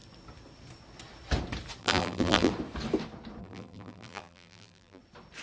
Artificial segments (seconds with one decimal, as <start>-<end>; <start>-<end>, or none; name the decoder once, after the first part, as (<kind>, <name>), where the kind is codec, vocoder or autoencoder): 1.8-2.5 (vocoder, BigVGAN v2); 3.4-5.0